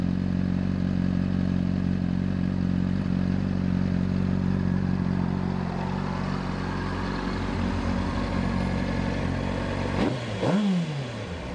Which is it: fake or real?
real